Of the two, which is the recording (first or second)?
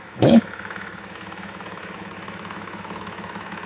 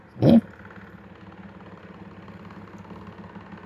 second